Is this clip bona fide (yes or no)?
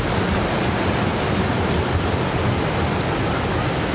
yes